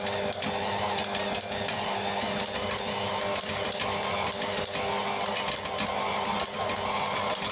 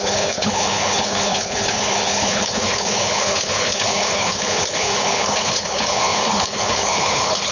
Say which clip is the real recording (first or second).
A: first